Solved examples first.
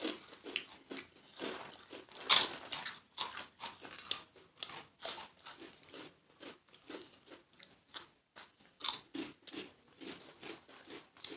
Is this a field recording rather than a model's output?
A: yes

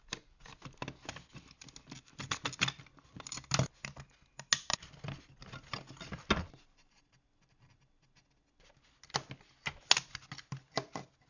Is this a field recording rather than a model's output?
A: yes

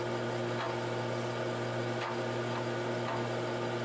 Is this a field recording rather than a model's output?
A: yes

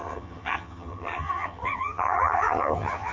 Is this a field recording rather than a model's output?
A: no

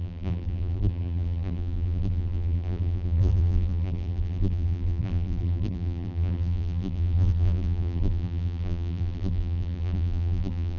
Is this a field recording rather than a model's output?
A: no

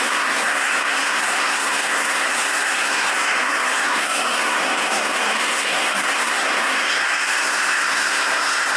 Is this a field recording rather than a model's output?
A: no